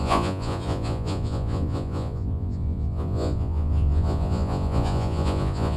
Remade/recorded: remade